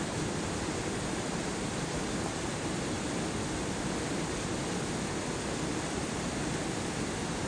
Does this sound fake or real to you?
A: real